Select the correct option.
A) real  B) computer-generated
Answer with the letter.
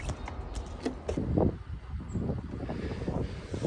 A